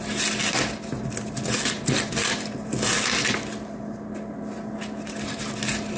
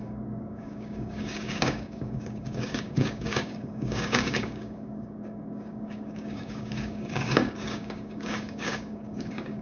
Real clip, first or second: first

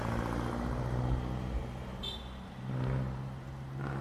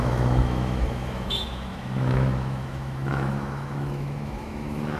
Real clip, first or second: first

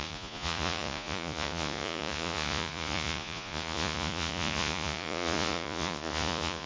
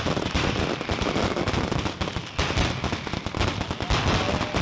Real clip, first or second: second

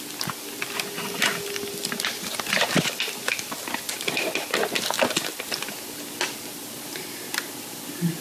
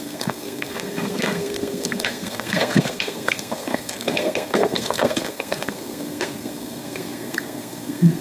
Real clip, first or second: first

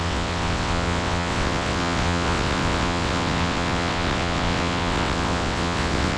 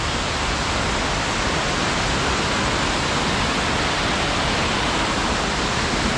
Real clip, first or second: second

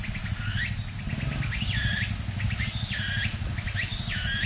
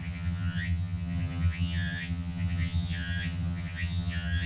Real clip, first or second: first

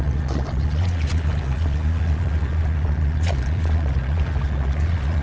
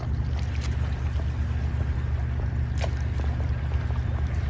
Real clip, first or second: second